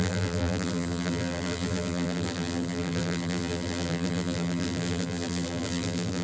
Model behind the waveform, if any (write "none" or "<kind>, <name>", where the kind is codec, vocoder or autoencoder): vocoder, BigVGAN v2